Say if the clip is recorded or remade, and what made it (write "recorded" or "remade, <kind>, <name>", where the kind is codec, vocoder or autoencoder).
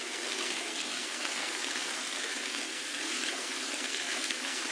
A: remade, codec, SNAC